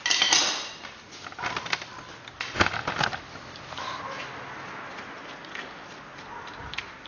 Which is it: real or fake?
real